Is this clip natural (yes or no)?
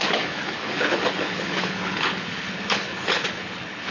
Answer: no